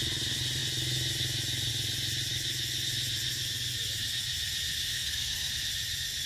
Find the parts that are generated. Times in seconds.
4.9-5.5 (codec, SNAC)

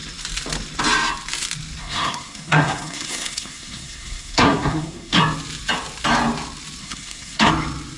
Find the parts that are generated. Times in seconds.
1.8-5.2 (codec, SNAC); 6.8-7.5

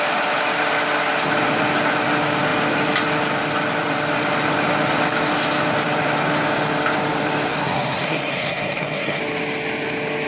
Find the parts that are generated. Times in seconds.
7.5-9.2 (codec, SNAC)

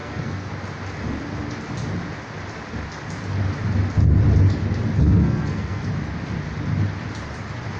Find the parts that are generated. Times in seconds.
0.0-0.5 (codec, SNAC); 5.0-5.8

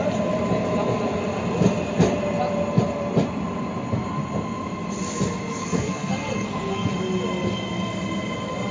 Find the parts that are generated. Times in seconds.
5.6-6.9 (codec, SNAC)

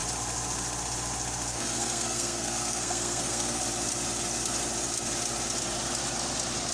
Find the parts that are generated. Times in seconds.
1.5-3.6 (codec, SNAC)

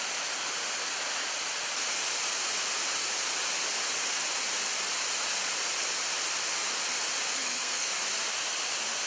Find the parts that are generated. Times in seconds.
7.4-7.9 (codec, SNAC)

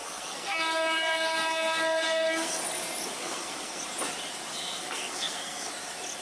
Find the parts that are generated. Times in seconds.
0.0-2.6 (codec, SNAC); 3.2-3.8; 4.5-5.7